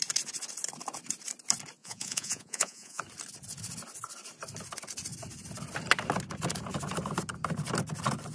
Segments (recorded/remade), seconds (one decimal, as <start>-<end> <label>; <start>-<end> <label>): 0.0-1.8 recorded; 1.8-3.0 remade; 3.0-8.3 recorded